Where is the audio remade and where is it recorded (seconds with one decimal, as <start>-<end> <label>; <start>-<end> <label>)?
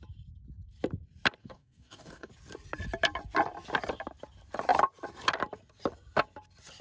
0.0-1.4 recorded; 1.4-2.3 remade; 2.3-6.8 recorded